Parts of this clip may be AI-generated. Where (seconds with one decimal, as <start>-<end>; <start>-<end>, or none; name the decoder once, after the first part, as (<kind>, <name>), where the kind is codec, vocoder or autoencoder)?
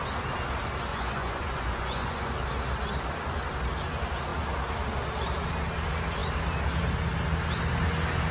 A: 0.9-2.3 (vocoder, Vocos)